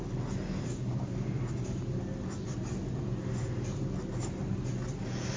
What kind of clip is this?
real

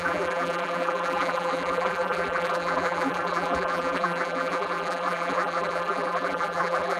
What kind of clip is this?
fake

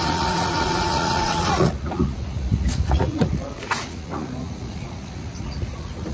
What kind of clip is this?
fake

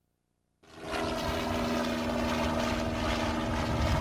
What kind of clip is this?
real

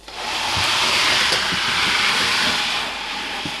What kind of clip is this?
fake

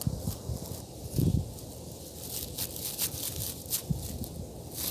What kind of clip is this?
real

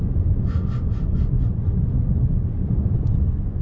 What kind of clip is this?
fake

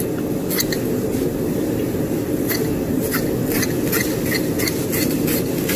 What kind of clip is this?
real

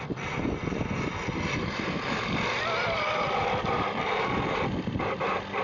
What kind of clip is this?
fake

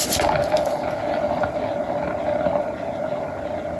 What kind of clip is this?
real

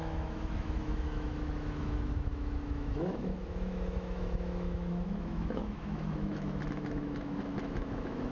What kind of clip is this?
fake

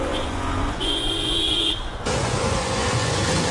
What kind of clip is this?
fake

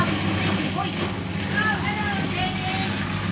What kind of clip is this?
real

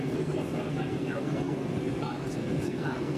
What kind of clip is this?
fake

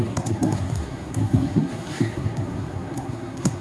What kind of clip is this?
fake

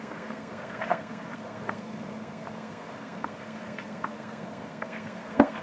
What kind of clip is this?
fake